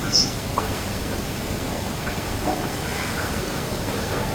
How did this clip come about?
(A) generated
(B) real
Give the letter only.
A